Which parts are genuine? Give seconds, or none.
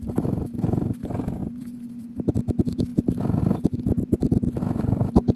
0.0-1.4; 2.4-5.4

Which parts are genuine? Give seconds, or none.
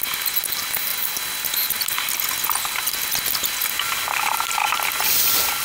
0.0-5.6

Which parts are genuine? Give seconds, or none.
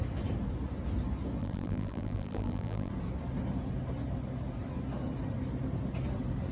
0.0-1.4; 2.9-6.5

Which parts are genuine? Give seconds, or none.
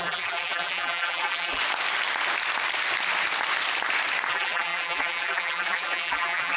1.6-4.3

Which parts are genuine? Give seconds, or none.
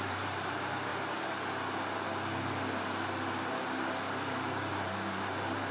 0.9-4.3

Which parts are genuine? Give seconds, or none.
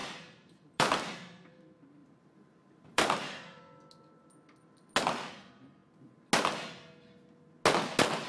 1.5-2.0; 3.6-8.3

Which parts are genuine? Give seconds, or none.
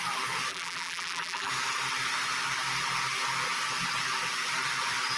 0.0-0.5; 1.5-5.2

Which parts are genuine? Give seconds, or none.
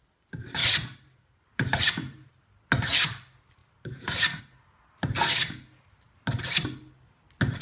0.0-0.6; 2.3-3.6; 4.4-7.6